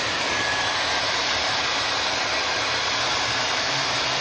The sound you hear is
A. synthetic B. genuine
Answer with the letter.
A